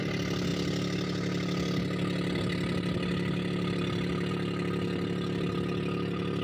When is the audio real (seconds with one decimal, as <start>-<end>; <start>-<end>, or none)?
0.0-6.4